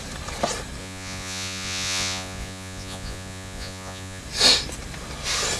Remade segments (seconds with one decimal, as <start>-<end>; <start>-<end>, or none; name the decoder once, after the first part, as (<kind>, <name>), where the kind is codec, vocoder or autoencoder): 0.8-4.2 (vocoder, Vocos)